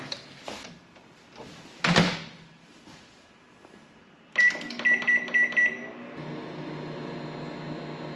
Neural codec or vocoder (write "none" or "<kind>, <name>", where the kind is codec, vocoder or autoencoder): none